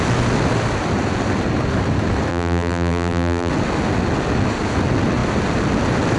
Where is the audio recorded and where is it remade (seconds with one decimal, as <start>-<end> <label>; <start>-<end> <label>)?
0.0-2.3 recorded; 2.3-3.5 remade; 3.5-6.2 recorded